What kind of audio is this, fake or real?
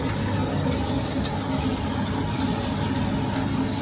real